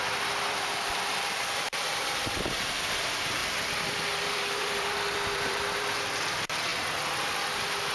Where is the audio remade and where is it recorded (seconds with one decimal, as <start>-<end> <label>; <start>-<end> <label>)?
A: 0.0-6.7 remade; 6.7-7.5 recorded; 7.5-7.9 remade

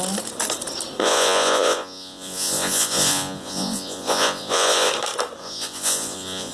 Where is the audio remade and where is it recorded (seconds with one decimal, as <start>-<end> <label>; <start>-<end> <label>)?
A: 0.0-1.0 recorded; 1.0-4.9 remade; 4.9-5.4 recorded; 5.4-6.5 remade

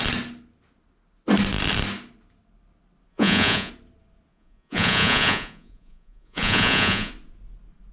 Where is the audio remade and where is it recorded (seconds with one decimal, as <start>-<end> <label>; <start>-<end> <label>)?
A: 0.0-3.1 recorded; 3.1-3.7 remade; 3.7-4.3 recorded; 4.3-7.1 remade; 7.1-7.9 recorded